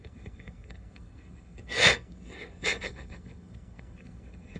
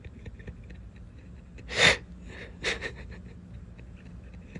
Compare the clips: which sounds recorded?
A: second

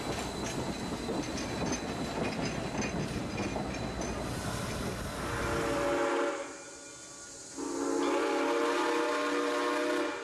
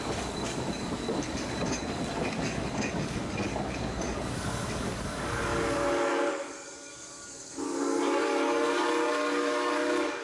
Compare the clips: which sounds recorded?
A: first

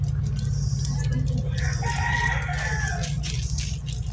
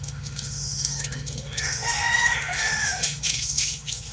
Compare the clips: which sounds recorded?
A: first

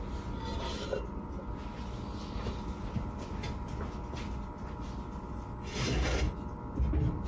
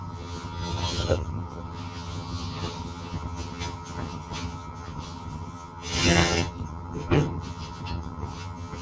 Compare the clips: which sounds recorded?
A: first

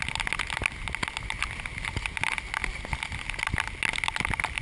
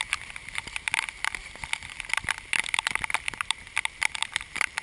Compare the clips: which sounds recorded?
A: first